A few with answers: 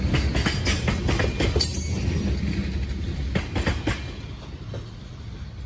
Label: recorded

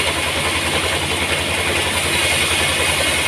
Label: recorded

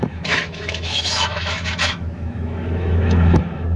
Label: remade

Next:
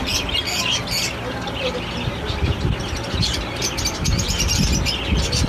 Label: recorded